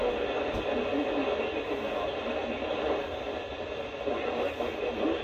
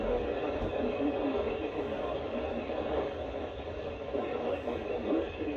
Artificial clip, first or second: second